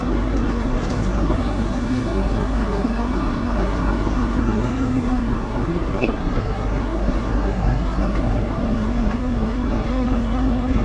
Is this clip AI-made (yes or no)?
yes